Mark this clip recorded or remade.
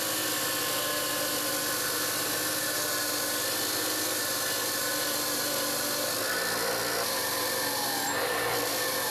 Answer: recorded